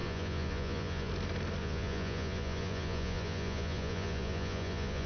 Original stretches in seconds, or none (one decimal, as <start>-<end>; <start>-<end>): 1.1-1.6